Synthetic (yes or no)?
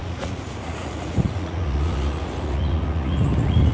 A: yes